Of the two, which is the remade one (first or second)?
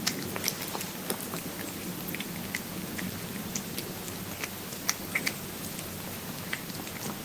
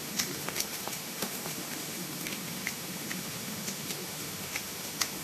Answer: second